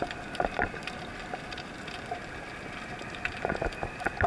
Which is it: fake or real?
real